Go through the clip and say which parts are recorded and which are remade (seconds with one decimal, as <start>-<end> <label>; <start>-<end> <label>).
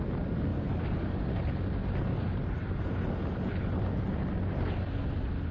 0.0-5.5 recorded